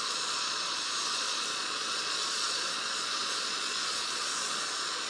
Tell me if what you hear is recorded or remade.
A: remade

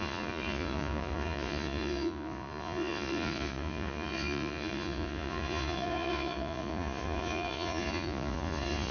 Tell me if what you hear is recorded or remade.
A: remade